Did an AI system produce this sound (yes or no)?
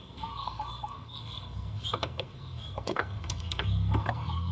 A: yes